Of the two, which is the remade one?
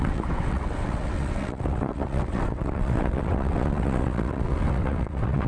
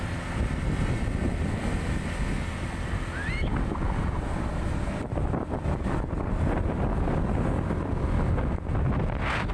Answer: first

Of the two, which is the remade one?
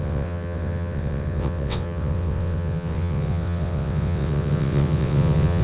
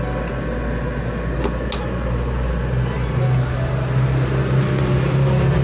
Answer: first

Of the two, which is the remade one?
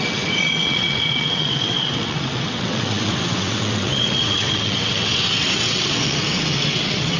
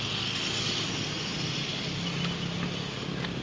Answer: first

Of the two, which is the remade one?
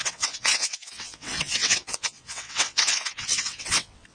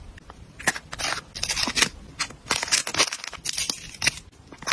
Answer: first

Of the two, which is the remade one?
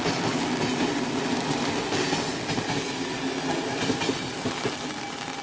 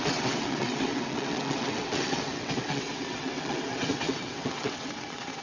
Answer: second